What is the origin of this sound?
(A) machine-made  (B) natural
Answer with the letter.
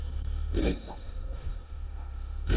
A